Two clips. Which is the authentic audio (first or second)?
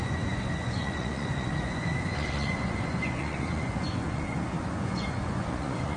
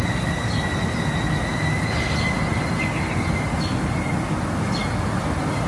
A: second